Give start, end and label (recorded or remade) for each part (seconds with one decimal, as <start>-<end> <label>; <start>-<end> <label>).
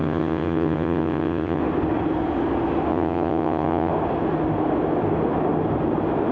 0.0-1.6 remade; 1.6-2.9 recorded; 2.9-3.9 remade; 3.9-6.3 recorded